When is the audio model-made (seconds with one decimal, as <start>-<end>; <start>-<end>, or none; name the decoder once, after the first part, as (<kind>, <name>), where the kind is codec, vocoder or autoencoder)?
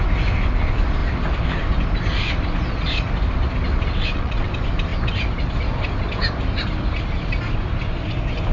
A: 3.7-4.5 (vocoder, WaveNeXt)